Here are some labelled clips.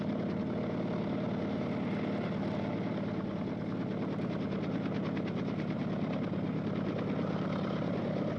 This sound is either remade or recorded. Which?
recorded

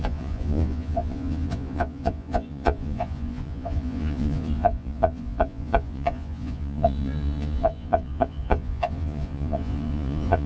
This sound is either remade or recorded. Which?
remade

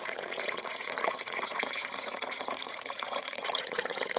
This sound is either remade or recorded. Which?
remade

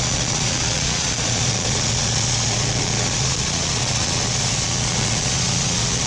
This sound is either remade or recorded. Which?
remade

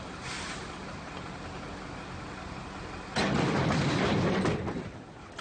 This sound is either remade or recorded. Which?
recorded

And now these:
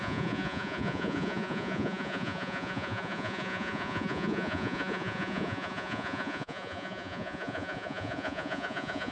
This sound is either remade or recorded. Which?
remade